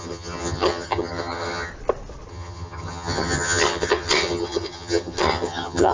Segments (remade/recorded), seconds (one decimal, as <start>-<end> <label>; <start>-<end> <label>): 0.0-1.7 remade; 1.7-2.3 recorded; 2.3-5.9 remade